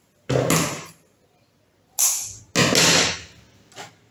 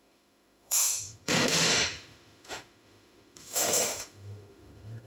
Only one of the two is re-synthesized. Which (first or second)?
second